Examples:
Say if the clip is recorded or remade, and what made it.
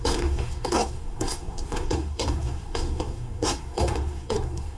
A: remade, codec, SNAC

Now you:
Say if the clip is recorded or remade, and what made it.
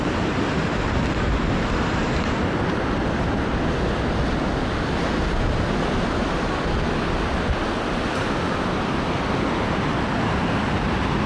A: recorded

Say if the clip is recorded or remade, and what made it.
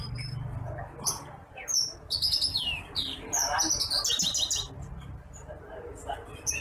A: recorded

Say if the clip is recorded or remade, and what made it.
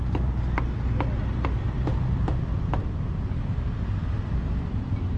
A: recorded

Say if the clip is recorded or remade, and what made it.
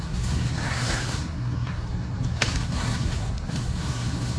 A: remade, codec, SNAC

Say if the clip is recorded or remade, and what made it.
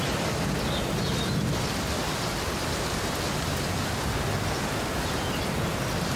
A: recorded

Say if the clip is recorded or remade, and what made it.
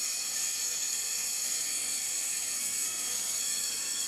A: remade, codec, SNAC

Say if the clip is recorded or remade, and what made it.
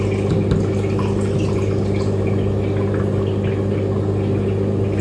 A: recorded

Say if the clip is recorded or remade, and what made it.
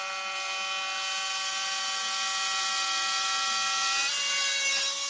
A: recorded